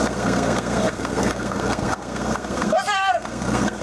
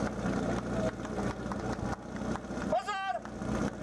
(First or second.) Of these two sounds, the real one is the second